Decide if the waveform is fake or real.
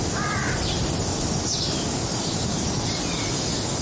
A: real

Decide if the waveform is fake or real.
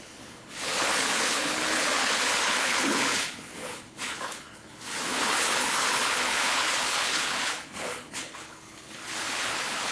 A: fake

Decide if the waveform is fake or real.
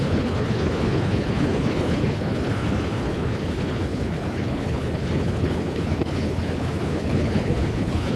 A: fake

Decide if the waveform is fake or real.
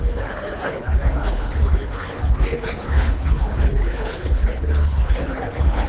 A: fake